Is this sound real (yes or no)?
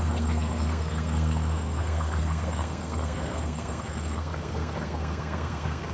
no